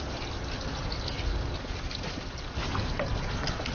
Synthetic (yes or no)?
no